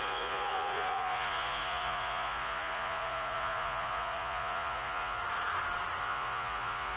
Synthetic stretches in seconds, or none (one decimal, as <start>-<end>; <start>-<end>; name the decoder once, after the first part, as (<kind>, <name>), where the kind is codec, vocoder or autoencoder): 0.0-5.2 (vocoder, Vocos); 6.0-7.0

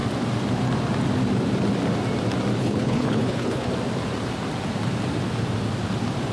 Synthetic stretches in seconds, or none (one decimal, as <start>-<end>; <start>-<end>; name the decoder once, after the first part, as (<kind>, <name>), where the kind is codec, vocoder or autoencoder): 2.6-3.7 (codec, HILCodec)

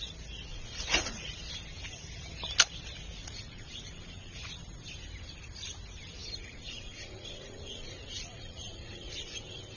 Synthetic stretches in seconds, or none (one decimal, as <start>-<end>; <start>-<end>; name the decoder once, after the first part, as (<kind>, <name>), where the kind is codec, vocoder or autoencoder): 0.5-1.3 (vocoder, Vocos); 3.2-4.5; 6.2-9.8

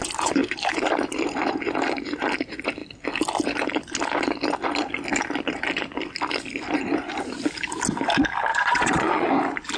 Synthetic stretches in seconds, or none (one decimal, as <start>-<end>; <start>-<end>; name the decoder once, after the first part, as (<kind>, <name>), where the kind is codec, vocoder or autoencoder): 8.5-9.3 (vocoder, Vocos)

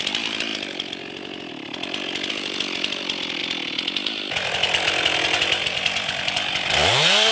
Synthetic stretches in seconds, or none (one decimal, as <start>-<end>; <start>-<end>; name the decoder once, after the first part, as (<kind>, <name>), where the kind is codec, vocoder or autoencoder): 0.0-0.5 (vocoder, BigVGAN v2); 2.3-3.4; 5.4-7.3

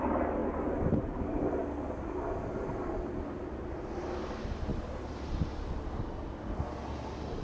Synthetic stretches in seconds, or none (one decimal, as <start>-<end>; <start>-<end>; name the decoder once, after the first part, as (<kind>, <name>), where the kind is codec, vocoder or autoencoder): none

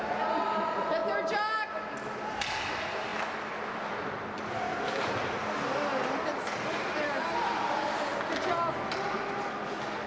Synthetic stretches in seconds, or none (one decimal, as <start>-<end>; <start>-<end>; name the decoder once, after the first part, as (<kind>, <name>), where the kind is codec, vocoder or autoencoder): none

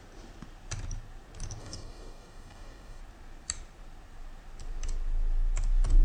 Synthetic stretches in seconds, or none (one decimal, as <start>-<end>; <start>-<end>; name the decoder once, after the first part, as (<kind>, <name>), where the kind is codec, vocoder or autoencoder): 1.6-3.0 (codec, DAC)